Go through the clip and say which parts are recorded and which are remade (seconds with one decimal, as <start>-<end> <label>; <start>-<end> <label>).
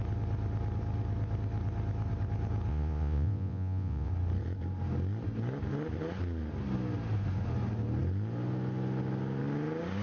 0.0-2.7 recorded; 2.7-4.1 remade; 4.1-10.0 recorded